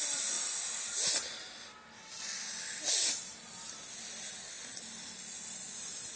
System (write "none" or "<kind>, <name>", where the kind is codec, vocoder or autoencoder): none